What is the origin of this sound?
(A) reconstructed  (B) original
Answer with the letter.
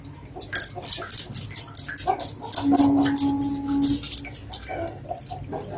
B